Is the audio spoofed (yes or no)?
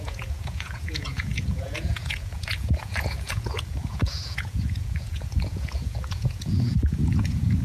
yes